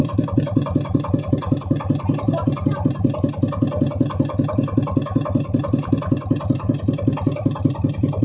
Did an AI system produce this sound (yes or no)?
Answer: yes